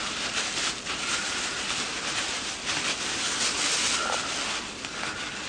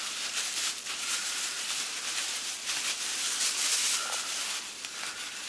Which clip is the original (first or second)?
first